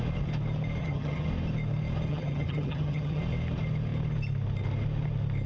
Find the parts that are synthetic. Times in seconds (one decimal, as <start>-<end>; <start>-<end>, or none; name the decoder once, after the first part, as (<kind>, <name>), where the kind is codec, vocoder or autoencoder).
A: 0.8-1.3 (vocoder, HiFi-GAN); 2.1-3.2